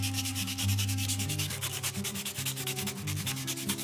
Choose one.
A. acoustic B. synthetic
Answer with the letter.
B